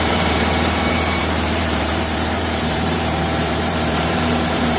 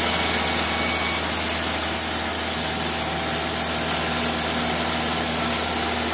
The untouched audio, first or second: second